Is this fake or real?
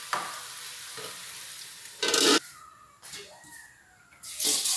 real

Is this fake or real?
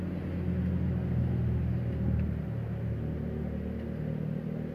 real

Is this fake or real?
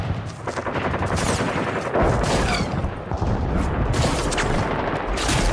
real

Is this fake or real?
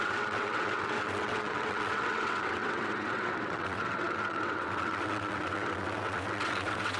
fake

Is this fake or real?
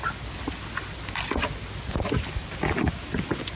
real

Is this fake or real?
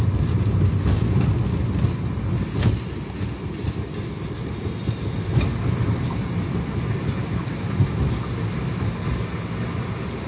real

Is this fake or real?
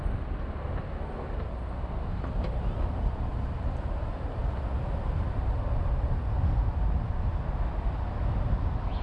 real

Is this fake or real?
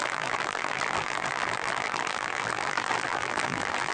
fake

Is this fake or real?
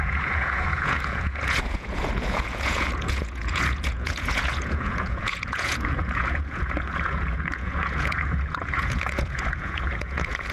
fake